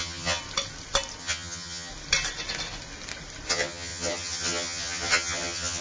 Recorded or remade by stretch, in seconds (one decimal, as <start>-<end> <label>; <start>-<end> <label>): 0.0-0.4 remade; 0.4-1.2 recorded; 1.2-1.9 remade; 1.9-3.5 recorded; 3.5-5.8 remade